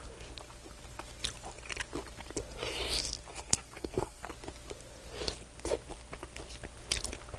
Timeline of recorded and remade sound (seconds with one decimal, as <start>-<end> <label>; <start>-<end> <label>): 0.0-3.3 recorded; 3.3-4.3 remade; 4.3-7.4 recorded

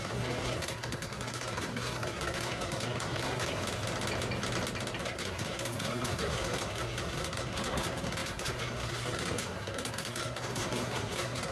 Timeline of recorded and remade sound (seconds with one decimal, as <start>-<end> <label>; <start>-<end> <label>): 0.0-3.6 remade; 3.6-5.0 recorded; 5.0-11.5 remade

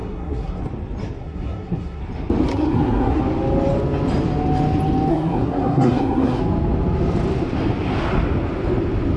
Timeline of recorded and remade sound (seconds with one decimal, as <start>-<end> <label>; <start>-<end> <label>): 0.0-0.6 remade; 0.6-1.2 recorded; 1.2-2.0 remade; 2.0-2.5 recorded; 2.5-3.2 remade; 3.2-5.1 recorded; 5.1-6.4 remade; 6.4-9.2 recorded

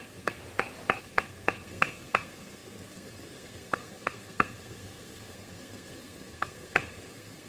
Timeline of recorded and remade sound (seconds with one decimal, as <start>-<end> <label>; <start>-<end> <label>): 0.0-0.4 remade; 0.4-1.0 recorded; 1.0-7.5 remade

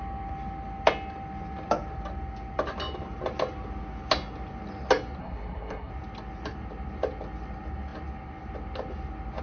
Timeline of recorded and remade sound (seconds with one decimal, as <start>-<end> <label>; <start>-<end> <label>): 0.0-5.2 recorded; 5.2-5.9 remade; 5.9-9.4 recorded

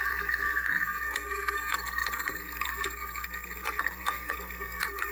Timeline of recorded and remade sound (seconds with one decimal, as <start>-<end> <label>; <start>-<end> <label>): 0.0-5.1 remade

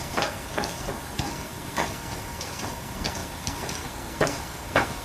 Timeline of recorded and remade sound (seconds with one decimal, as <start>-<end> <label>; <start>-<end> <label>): 0.0-5.0 remade

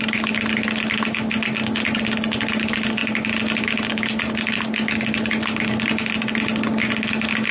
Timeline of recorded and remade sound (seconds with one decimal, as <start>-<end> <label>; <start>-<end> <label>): 0.0-7.5 recorded